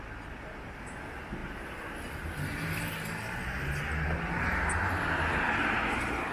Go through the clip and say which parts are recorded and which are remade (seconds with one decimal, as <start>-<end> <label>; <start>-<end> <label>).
0.0-6.3 recorded